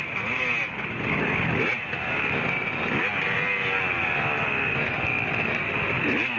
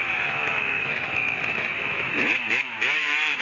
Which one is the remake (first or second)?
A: second